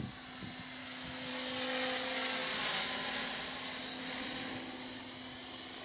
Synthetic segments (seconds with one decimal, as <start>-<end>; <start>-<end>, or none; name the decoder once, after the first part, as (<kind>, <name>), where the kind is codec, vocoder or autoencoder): 0.8-1.3 (autoencoder, DAC-VAE)